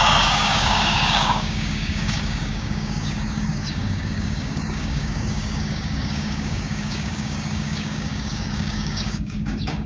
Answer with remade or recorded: remade